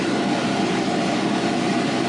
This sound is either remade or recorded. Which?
recorded